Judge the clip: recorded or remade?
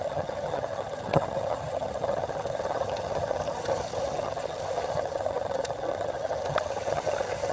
remade